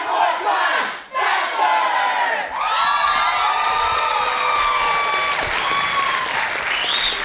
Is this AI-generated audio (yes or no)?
no